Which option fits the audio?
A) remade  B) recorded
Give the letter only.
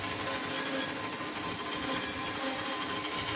B